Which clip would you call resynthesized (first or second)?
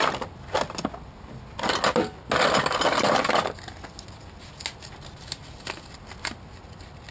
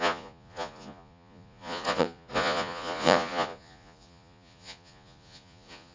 second